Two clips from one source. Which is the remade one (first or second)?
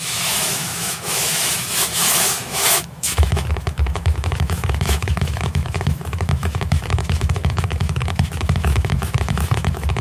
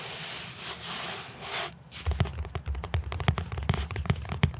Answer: first